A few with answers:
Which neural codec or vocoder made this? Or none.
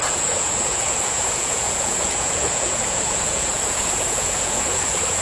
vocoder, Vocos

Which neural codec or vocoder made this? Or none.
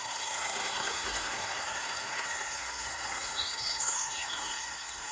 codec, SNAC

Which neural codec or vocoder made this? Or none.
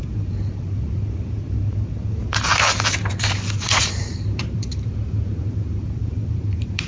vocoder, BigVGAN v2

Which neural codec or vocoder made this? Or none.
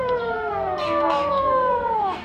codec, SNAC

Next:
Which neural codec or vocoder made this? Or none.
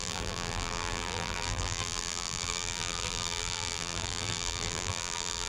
vocoder, BigVGAN v2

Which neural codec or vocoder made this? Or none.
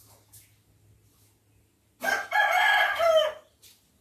none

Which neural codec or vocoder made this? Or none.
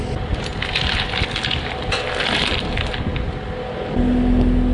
none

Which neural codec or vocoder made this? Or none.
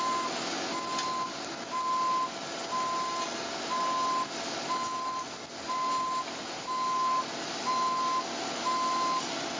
none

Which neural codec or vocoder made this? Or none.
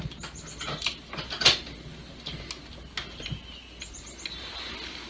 none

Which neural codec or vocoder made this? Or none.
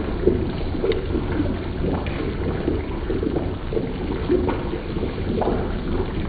none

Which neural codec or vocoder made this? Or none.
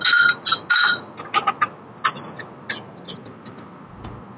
none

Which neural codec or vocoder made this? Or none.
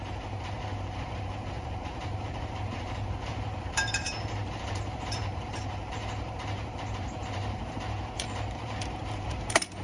vocoder, BigVGAN v2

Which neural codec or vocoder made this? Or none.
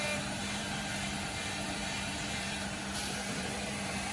vocoder, BigVGAN v2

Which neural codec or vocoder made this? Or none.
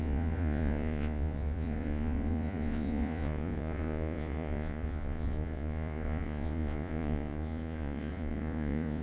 vocoder, Vocos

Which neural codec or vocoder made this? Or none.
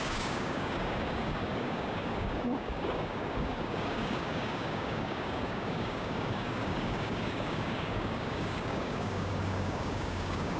codec, DAC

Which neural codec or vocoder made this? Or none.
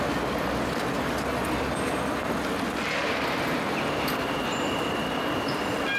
none